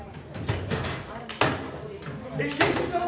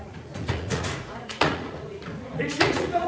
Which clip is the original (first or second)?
first